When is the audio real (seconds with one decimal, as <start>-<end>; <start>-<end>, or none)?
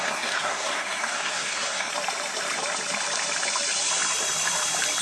1.9-5.0